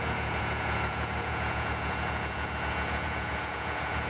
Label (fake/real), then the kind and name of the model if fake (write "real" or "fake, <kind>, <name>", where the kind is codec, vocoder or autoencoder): fake, vocoder, Vocos